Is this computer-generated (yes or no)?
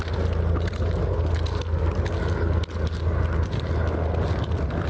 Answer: no